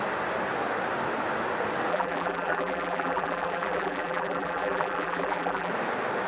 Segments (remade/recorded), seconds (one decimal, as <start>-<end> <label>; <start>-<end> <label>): 0.0-1.9 recorded; 1.9-5.7 remade; 5.7-6.3 recorded